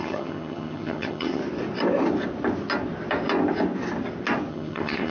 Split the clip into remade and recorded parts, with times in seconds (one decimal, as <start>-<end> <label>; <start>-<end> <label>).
0.0-1.4 remade; 1.4-4.5 recorded; 4.5-5.1 remade